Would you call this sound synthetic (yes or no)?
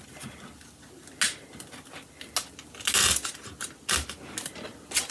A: no